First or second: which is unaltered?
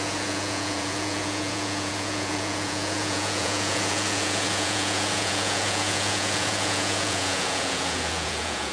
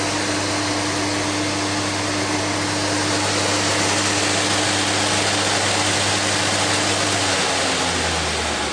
second